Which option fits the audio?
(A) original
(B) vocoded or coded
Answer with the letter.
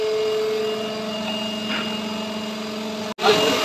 A